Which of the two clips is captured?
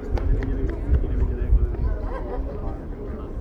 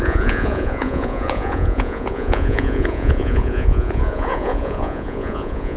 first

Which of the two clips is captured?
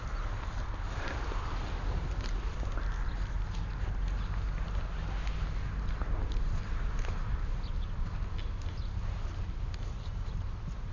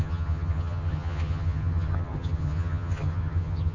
first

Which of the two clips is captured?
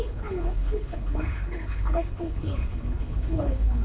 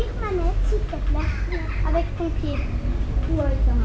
second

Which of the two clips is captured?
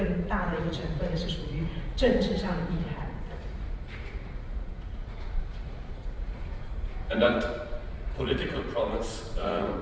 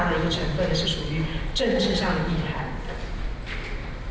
second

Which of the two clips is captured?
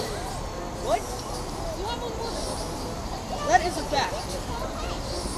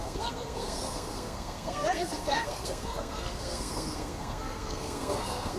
first